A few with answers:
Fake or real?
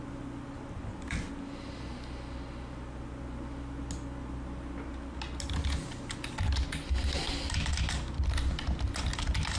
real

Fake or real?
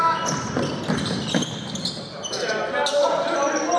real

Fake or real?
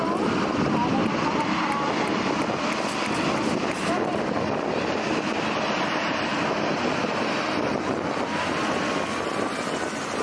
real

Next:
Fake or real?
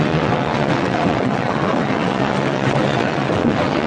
fake